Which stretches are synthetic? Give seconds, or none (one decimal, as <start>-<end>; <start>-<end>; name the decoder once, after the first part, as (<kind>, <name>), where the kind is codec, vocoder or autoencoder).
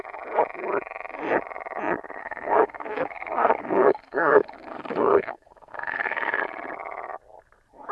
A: 2.2-6.4 (codec, SNAC)